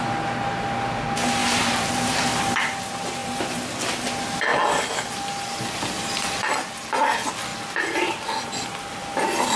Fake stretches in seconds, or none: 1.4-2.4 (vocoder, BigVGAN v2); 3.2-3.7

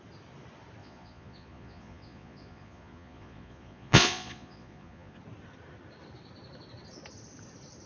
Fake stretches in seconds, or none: 0.8-5.2 (vocoder, Vocos)

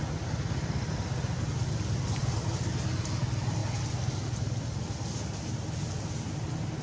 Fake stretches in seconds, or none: none

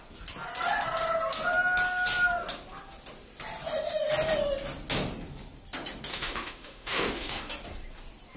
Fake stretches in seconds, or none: 6.1-7.5 (autoencoder, DAC-VAE)

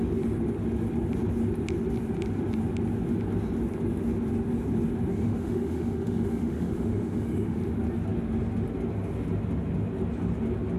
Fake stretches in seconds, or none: 5.1-7.6 (autoencoder, DAC-VAE)

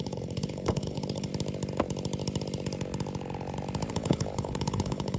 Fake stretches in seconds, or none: 0.0-1.3 (codec, HILCodec); 3.9-5.2

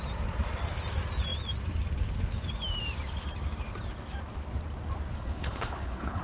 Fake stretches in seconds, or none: 5.1-6.2 (codec, HILCodec)

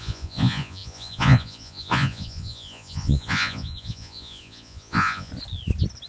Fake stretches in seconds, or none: 0.0-5.3 (vocoder, Vocos)